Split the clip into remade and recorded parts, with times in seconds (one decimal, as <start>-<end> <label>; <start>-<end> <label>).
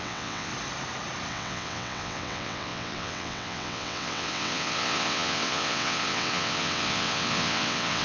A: 0.0-0.5 remade; 0.5-1.3 recorded; 1.3-8.0 remade